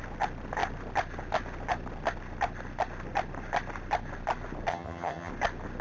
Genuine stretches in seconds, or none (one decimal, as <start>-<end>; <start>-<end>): 0.0-4.7; 5.3-5.8

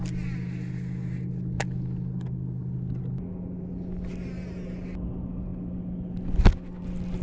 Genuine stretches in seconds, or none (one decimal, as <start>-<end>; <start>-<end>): 0.0-7.2

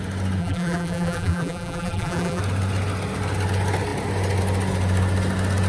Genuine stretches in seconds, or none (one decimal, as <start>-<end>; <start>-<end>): 0.0-0.4; 2.4-5.7

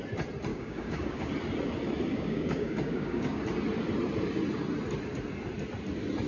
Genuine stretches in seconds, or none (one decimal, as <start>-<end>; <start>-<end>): 0.0-0.5; 1.3-2.1; 3.4-6.3

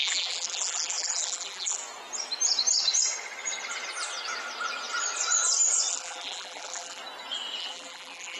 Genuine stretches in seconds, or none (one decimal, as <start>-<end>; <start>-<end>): 1.8-5.9; 7.0-7.6